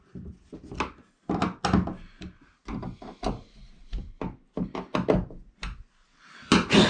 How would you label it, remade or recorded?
recorded